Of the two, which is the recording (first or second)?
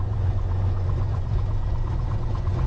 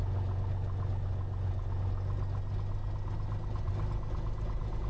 second